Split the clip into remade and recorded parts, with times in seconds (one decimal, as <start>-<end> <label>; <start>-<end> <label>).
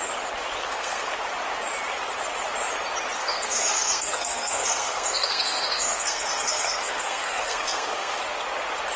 0.0-0.6 recorded; 0.6-1.1 remade; 1.1-3.2 recorded; 3.2-8.2 remade; 8.2-9.0 recorded